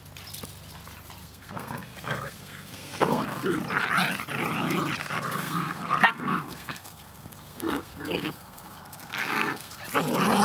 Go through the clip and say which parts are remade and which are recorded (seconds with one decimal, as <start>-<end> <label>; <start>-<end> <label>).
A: 0.0-1.2 recorded; 1.2-3.6 remade; 3.6-5.0 recorded; 5.0-9.8 remade; 9.8-10.4 recorded